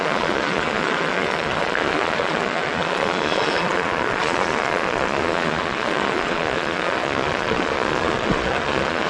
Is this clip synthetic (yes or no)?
yes